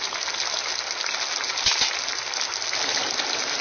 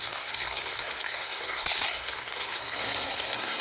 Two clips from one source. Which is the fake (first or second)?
second